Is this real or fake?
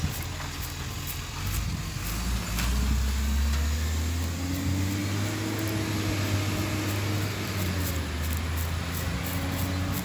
real